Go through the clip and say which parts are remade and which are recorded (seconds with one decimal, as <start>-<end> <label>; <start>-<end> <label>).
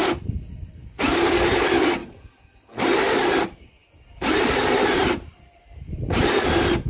0.0-6.9 recorded